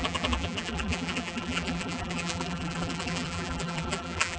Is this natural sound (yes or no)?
no